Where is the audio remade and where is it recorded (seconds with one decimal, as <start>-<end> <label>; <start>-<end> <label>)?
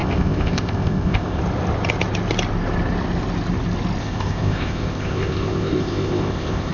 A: 0.0-1.4 remade; 1.4-4.0 recorded; 4.0-6.7 remade